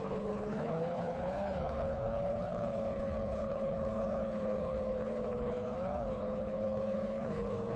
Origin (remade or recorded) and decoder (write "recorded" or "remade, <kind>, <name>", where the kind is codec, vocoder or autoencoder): remade, codec, HILCodec